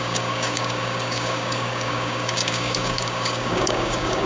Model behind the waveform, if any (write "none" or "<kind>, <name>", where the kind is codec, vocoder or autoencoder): codec, DAC